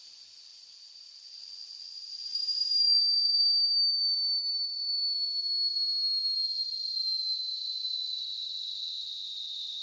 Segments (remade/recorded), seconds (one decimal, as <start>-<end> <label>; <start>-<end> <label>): 0.0-9.8 recorded